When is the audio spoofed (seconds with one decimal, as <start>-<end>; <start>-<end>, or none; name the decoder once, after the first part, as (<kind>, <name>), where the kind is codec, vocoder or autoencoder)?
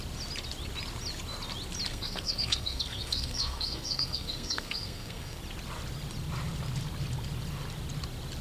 1.9-5.4 (codec, SNAC)